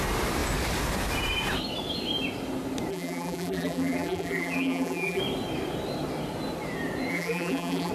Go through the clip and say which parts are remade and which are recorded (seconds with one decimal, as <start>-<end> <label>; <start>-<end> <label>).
0.0-2.9 recorded; 2.9-5.2 remade; 5.2-7.1 recorded; 7.1-7.9 remade